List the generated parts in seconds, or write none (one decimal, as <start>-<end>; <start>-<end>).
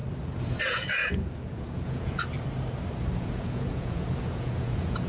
0.6-2.2; 3.2-5.1